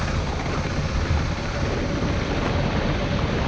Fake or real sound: real